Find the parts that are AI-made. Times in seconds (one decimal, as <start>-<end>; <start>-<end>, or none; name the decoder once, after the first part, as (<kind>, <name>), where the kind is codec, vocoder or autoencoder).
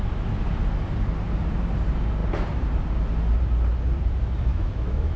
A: 4.5-5.2 (autoencoder, DAC-VAE)